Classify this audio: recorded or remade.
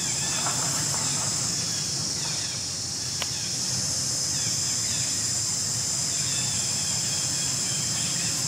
recorded